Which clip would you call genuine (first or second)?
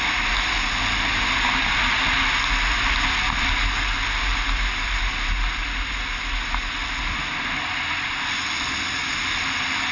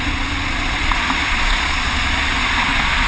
first